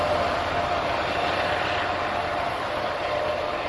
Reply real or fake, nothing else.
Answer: fake